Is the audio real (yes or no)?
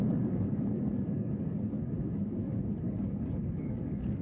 no